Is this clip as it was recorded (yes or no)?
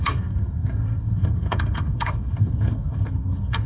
no